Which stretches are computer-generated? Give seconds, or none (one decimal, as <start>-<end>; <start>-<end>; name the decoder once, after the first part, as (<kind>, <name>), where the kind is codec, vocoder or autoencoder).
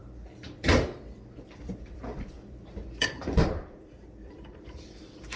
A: 0.0-5.4 (vocoder, BigVGAN v2)